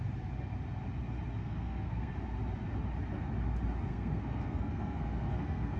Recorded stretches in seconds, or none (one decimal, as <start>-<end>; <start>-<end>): 0.0-1.4; 2.1-3.9